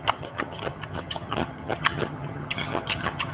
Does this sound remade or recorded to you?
remade